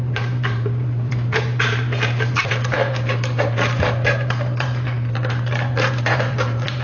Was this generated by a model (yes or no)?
yes